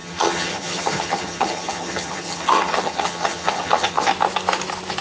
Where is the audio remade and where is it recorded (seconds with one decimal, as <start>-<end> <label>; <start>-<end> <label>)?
0.0-4.1 remade; 4.1-5.0 recorded